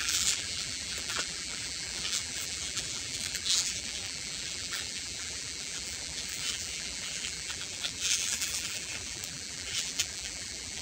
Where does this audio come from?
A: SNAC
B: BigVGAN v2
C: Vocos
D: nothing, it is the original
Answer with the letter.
B